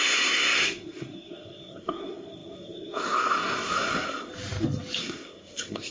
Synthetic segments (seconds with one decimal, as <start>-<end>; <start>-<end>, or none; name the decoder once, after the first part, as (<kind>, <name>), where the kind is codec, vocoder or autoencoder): 0.0-4.3 (codec, SNAC); 5.0-5.9